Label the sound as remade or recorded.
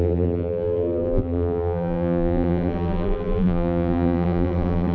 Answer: remade